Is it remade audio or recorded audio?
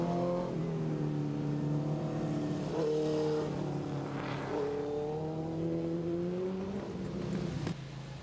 recorded